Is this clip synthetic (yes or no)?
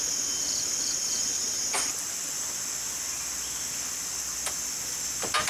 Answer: no